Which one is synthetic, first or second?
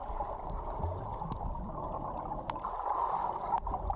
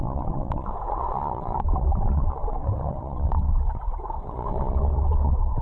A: second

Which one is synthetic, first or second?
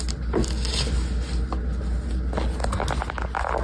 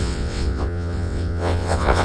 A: second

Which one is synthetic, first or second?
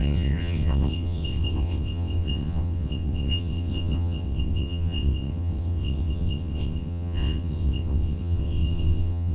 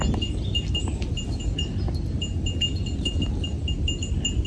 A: first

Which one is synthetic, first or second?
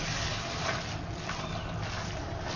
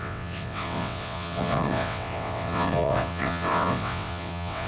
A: second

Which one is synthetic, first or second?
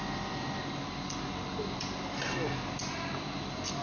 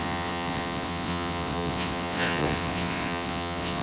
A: second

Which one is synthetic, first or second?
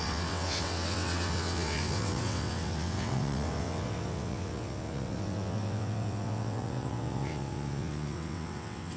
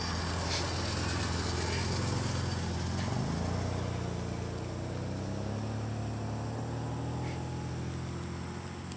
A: first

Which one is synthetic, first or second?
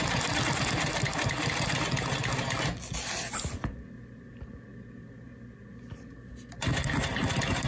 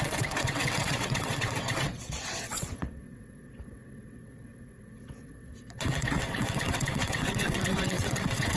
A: second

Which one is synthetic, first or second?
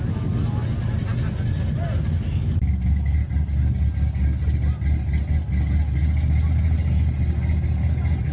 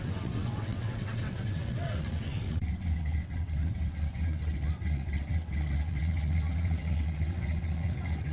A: second